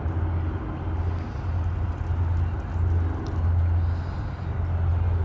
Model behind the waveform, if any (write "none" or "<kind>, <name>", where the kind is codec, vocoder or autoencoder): none